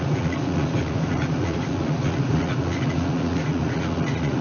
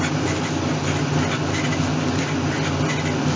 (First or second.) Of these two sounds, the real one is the second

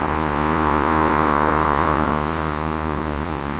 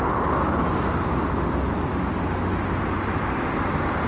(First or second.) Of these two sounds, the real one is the second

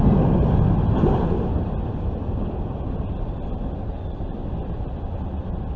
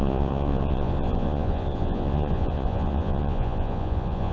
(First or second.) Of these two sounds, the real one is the first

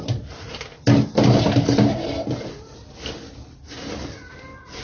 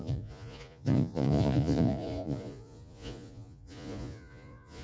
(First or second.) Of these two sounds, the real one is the first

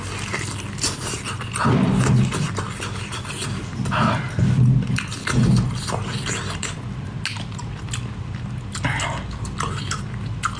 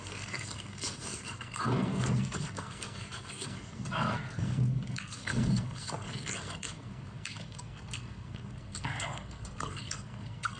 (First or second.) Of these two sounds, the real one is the first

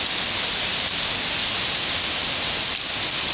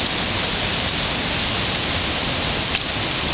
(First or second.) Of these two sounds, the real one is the first